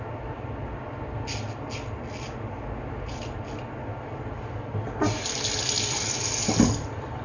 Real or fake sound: real